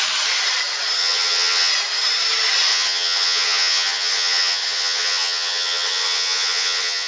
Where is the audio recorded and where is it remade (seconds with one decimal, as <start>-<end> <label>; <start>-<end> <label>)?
0.0-1.0 recorded; 1.0-1.7 remade; 1.7-2.7 recorded; 2.7-7.1 remade